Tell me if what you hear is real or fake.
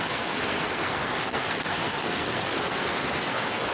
fake